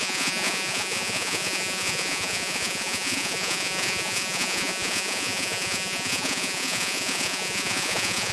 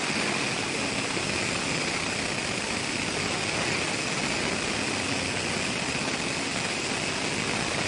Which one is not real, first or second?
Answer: first